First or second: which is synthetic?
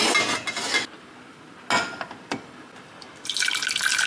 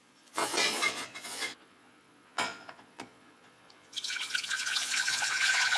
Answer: second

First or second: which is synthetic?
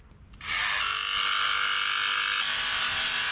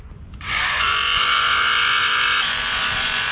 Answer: second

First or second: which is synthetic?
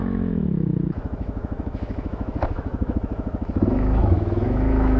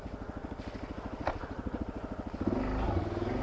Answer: first